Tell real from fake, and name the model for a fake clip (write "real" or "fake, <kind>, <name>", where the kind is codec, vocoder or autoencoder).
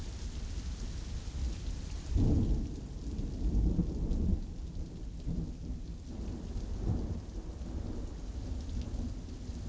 real